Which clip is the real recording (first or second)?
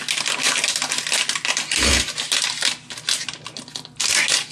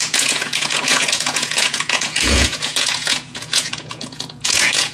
first